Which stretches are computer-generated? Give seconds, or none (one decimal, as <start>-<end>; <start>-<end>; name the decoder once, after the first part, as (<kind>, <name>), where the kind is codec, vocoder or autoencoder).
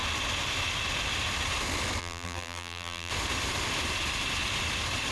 2.0-3.1 (vocoder, BigVGAN v2)